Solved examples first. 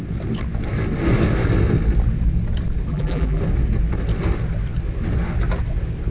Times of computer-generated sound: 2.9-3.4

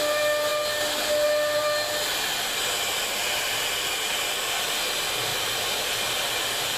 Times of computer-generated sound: 5.3-5.9

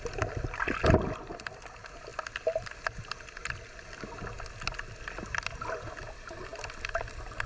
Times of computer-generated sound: 0.0-2.1; 5.9-6.5

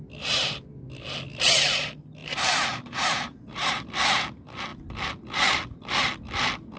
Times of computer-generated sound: 2.2-3.7

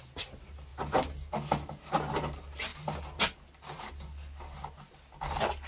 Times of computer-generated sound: none

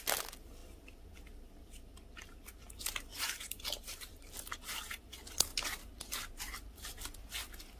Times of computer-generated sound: 3.1-4.7